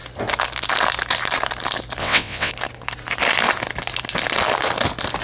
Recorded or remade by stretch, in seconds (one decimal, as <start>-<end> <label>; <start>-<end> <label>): 0.0-2.0 recorded; 2.0-2.5 remade; 2.5-5.2 recorded